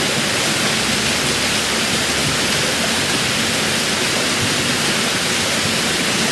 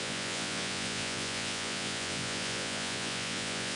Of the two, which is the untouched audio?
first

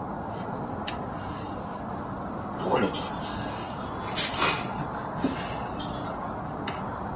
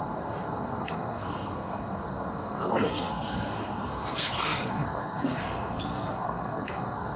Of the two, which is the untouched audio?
first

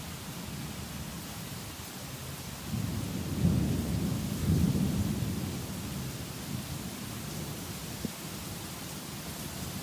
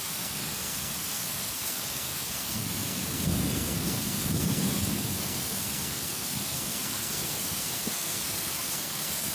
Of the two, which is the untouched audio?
first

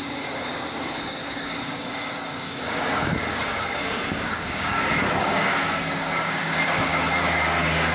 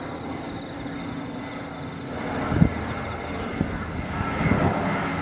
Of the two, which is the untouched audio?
second